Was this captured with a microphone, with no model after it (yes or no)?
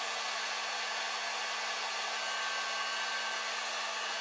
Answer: yes